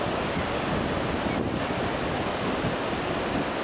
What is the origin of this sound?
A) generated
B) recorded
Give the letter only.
B